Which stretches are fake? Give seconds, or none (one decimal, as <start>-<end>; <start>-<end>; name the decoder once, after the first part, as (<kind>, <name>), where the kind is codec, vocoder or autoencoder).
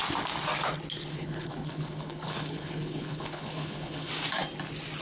1.1-4.1 (codec, HILCodec)